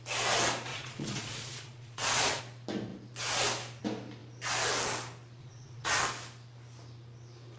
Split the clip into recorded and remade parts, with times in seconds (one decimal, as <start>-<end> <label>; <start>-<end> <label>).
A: 0.0-0.7 recorded; 0.7-2.4 remade; 2.4-5.4 recorded; 5.4-6.0 remade; 6.0-7.6 recorded